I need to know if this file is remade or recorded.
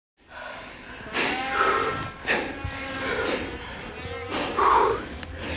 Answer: recorded